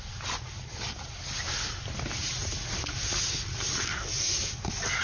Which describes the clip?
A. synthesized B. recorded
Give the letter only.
B